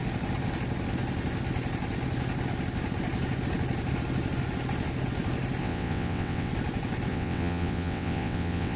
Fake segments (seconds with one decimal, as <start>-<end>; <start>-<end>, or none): 5.6-6.5; 7.1-8.8